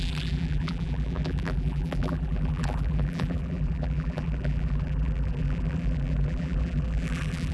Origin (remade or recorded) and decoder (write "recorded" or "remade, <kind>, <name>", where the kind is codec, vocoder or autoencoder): remade, vocoder, BigVGAN v2